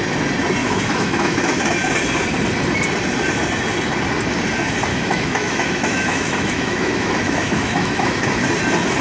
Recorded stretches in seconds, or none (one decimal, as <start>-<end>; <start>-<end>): 0.0-0.6; 1.6-4.9; 8.4-9.0